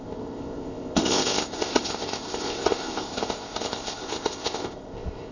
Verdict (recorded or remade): remade